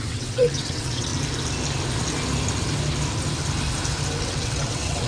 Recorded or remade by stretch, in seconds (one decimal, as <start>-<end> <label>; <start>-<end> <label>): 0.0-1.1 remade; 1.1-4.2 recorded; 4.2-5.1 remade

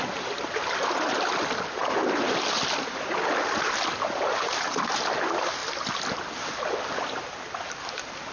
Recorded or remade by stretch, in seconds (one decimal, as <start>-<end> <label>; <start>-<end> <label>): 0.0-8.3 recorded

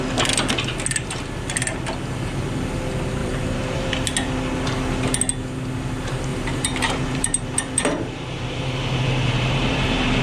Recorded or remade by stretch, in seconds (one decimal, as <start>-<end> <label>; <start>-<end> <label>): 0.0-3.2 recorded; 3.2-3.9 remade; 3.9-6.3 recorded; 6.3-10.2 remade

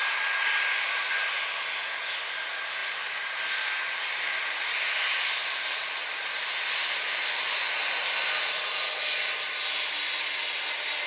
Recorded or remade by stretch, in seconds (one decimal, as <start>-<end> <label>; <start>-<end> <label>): 0.0-5.4 recorded; 5.4-6.2 remade; 6.2-11.1 recorded

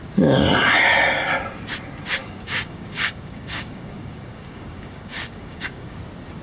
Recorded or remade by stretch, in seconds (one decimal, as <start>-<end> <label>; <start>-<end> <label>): 0.0-2.2 recorded; 2.2-6.0 remade; 6.0-6.4 recorded

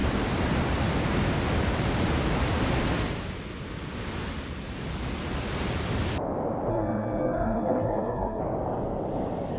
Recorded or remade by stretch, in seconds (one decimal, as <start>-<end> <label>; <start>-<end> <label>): 0.0-6.7 recorded; 6.7-8.4 remade; 8.4-9.6 recorded